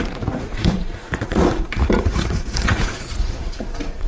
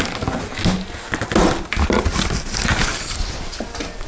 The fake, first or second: first